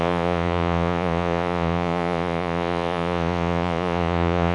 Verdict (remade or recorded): remade